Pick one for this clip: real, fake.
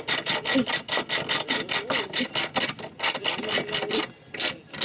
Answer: real